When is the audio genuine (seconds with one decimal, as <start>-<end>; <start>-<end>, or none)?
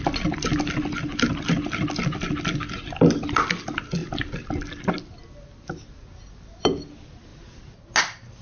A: 0.0-8.4